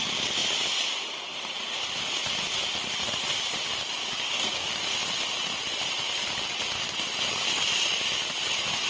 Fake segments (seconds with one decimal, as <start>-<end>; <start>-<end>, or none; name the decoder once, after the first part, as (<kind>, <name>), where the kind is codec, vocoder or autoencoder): 4.0-4.8 (codec, DAC)